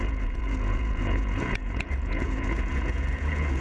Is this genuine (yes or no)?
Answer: no